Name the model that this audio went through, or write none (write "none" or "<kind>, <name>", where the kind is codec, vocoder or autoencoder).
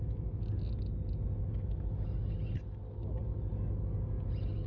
none